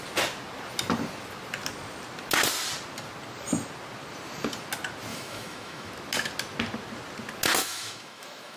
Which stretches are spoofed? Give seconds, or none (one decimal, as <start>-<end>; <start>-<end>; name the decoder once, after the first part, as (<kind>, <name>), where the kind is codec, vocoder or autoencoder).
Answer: 5.1-5.9 (autoencoder, DAC-VAE); 7.6-8.6